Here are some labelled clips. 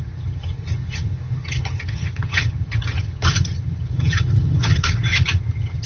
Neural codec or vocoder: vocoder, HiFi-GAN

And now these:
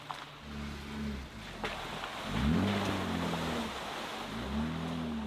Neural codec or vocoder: none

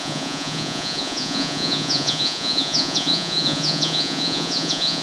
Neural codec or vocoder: vocoder, Vocos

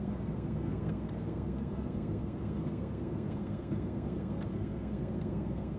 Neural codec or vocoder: codec, SNAC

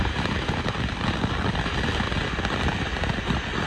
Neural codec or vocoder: none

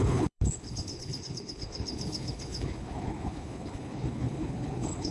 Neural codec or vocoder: codec, HILCodec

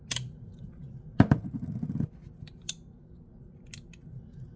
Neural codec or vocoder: none